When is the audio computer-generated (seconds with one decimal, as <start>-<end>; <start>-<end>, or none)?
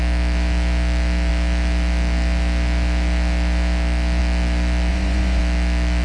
4.9-5.4